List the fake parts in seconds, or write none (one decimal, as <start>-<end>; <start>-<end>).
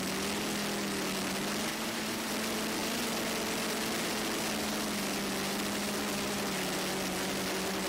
1.7-2.3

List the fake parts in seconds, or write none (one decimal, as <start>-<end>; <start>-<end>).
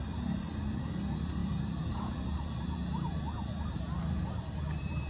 0.0-5.1